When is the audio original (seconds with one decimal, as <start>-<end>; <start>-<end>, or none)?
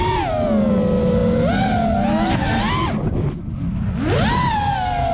0.0-5.1